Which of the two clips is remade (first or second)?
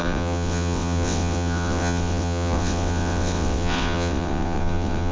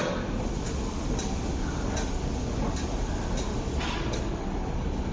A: first